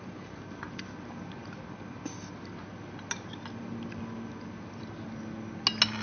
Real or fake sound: real